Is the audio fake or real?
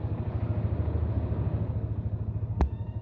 real